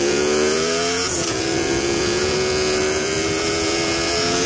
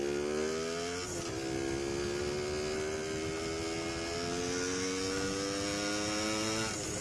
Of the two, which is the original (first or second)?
second